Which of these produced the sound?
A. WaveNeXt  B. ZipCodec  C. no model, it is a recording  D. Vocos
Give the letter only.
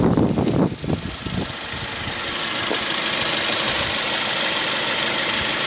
C